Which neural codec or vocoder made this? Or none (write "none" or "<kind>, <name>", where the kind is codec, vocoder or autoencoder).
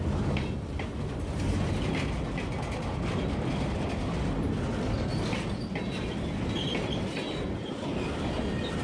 none